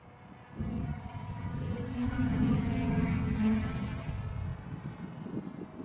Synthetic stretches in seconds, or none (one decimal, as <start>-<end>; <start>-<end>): 0.6-4.1